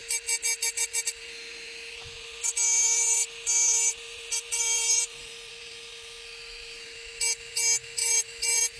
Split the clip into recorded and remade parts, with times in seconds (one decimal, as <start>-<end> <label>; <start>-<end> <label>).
0.0-3.9 recorded; 3.9-5.5 remade; 5.5-8.0 recorded; 8.0-8.8 remade